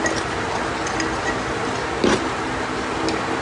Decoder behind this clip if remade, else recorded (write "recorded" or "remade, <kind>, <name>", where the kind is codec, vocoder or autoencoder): recorded